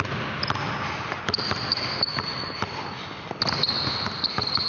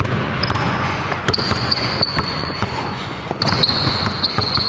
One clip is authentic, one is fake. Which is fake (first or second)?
second